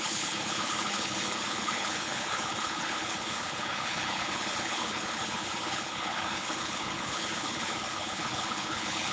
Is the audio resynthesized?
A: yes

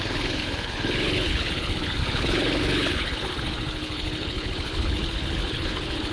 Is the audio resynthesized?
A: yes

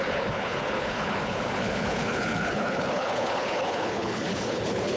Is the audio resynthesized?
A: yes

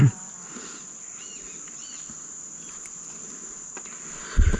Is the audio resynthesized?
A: no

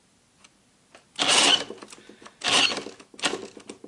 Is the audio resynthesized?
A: no